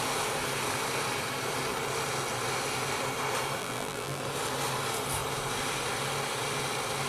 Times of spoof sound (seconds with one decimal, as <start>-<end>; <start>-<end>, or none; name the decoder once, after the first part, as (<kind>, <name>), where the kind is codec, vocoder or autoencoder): 3.6-4.2 (vocoder, BigVGAN v2)